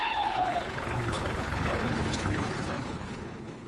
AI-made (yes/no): yes